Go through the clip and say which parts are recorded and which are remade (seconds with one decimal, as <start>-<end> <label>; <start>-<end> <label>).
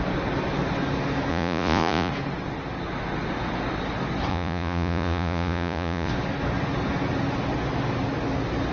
0.0-1.3 recorded; 1.3-2.1 remade; 2.1-4.3 recorded; 4.3-6.1 remade; 6.1-8.7 recorded